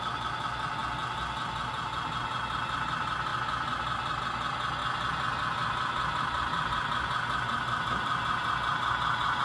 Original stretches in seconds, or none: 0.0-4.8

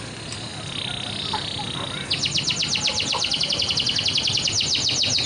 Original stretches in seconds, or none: 0.0-5.3

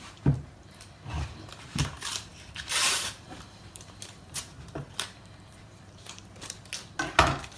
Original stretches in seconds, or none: 6.7-7.6

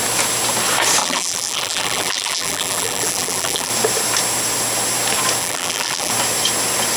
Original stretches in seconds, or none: 0.0-1.0; 3.7-5.4; 6.1-7.0

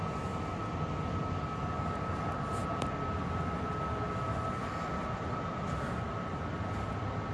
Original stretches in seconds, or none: 0.0-0.6; 1.2-2.6